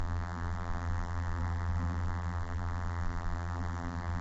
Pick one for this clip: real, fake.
fake